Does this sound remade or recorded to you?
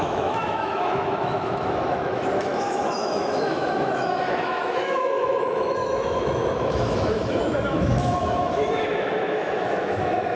remade